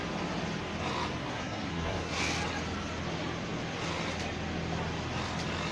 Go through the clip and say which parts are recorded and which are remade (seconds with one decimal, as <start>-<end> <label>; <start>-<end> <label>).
0.0-1.2 recorded; 1.2-2.2 remade; 2.2-5.7 recorded